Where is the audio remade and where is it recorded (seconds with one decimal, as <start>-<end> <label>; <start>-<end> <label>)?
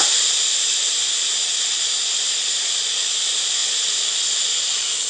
0.0-1.0 remade; 1.0-3.0 recorded; 3.0-3.6 remade; 3.6-4.3 recorded; 4.3-5.1 remade